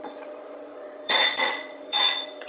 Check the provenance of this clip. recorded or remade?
remade